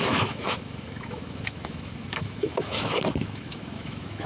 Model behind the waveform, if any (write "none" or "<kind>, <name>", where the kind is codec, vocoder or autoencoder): autoencoder, DAC-VAE